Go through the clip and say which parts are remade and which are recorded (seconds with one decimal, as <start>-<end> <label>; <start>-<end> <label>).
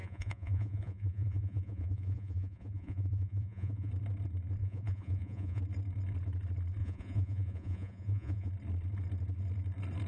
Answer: 0.0-3.9 remade; 3.9-4.6 recorded; 4.6-5.6 remade; 5.6-6.8 recorded; 6.8-8.5 remade; 8.5-10.1 recorded